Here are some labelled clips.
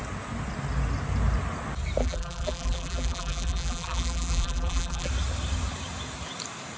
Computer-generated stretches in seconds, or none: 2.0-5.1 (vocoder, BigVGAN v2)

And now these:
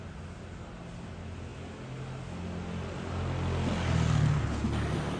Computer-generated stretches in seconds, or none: none

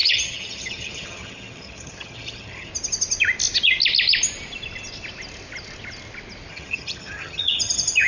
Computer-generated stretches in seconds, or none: 0.0-2.7 (vocoder, HiFi-GAN); 6.5-8.1

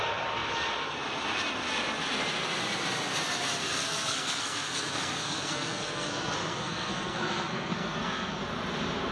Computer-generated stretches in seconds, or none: 3.6-8.4 (codec, SNAC)

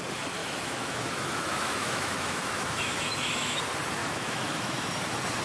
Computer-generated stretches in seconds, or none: 0.4-3.6 (autoencoder, DAC-VAE); 4.0-4.9